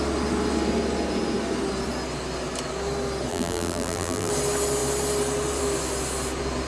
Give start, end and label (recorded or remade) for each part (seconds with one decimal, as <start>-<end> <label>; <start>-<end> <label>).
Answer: 0.0-3.3 recorded; 3.3-4.3 remade; 4.3-6.7 recorded